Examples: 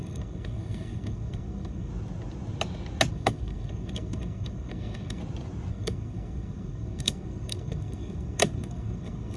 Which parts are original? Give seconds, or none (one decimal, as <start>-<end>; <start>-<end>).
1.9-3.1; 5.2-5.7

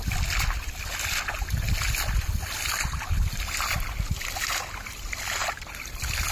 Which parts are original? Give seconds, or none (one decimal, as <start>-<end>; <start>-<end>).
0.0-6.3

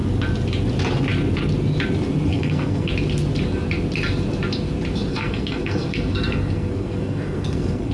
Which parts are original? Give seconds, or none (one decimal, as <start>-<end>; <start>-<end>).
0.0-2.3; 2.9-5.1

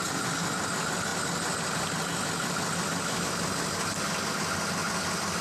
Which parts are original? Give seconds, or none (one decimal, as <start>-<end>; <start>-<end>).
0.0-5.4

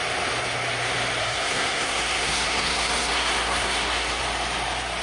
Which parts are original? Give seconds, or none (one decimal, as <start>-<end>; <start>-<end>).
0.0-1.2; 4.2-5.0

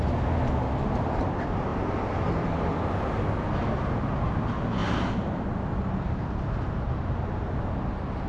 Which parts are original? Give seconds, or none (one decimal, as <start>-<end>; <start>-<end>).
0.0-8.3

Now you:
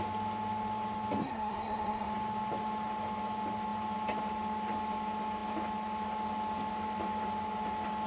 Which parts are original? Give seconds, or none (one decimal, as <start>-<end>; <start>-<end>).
0.0-1.2; 2.1-8.1

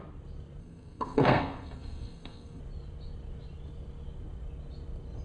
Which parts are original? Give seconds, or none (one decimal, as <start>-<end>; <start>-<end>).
0.0-0.6; 2.6-5.2